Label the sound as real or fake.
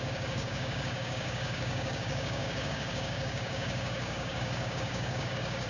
fake